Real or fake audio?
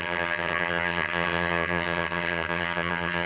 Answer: fake